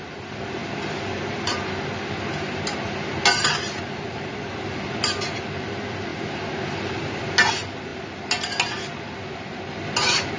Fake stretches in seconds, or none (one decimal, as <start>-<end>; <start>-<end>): none